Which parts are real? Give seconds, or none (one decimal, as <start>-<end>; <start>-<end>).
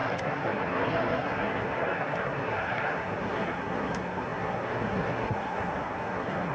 none